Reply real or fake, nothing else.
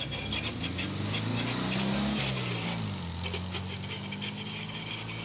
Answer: real